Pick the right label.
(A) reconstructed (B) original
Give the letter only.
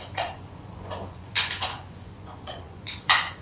A